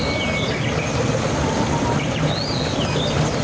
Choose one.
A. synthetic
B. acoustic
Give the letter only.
B